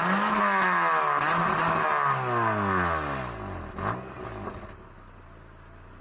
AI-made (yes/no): no